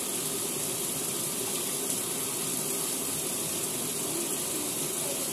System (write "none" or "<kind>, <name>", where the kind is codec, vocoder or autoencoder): vocoder, BigVGAN v2